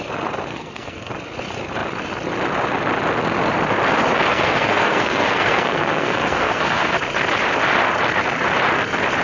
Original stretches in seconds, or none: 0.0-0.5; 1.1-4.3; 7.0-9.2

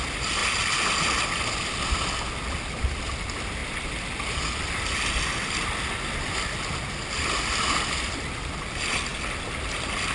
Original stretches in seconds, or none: 0.0-10.1

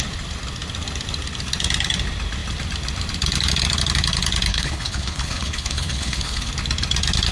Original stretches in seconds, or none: 0.0-4.5; 6.5-7.3

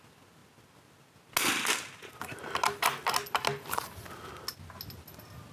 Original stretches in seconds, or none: 0.0-5.5